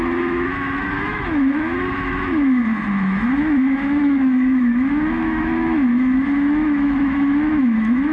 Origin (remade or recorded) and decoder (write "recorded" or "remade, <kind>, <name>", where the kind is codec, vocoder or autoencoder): remade, autoencoder, DAC-VAE